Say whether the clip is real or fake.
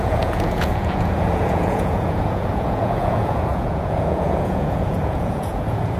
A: fake